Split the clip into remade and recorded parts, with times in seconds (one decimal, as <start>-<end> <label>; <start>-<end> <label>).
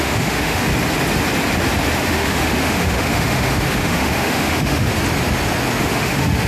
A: 0.0-0.7 remade; 0.7-2.0 recorded; 2.0-4.9 remade; 4.9-5.8 recorded; 5.8-6.5 remade